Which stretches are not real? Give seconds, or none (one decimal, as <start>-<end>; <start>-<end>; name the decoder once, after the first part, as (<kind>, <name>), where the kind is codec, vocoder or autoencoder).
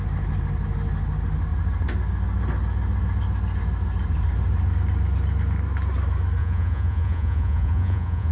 6.4-8.3 (vocoder, Vocos)